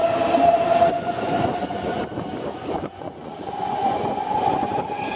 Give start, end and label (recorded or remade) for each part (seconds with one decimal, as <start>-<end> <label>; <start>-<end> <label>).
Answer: 0.0-0.9 recorded; 0.9-5.2 remade